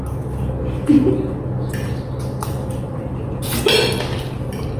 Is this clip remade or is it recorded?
recorded